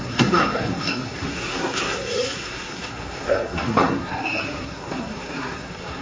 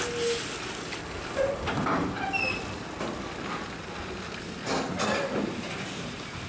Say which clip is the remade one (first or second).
first